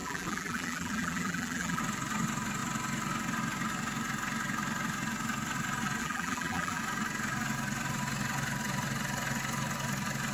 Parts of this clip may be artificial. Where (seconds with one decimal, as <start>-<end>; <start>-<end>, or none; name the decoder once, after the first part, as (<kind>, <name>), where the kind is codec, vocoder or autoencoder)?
0.0-1.8 (vocoder, BigVGAN v2); 6.0-6.8